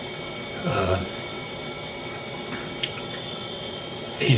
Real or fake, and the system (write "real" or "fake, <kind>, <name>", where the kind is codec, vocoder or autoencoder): fake, vocoder, WaveNeXt